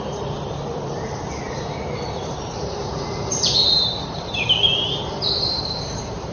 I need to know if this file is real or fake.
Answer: fake